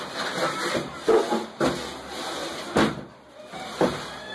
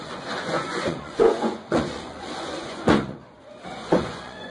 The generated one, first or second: second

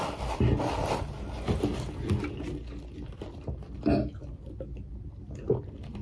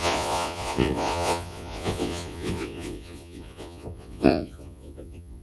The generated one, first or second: second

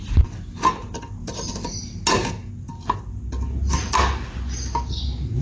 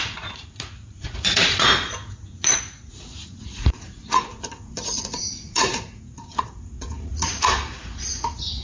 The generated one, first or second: second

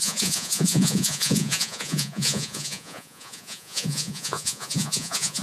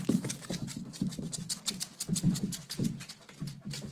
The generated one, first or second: first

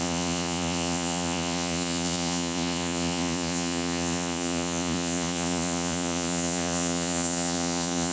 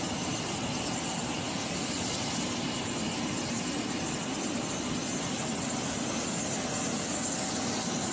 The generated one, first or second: first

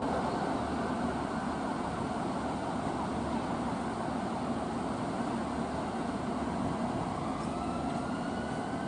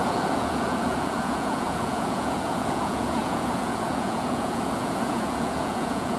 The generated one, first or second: second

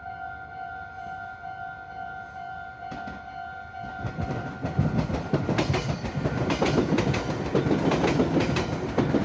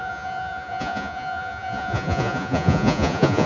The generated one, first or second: second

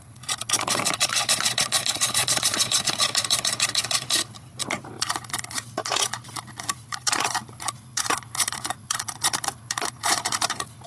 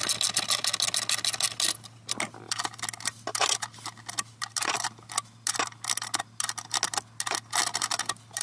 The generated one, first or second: first